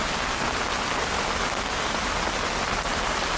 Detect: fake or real real